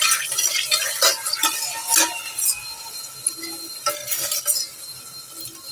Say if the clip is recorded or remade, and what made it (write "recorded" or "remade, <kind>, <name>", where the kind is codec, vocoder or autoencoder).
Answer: recorded